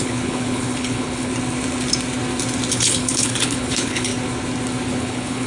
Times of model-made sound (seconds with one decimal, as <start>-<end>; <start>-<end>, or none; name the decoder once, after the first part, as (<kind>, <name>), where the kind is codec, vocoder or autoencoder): 0.0-1.3 (codec, HILCodec); 2.7-4.1; 4.9-5.5